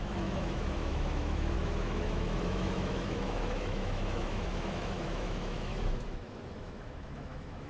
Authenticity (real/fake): fake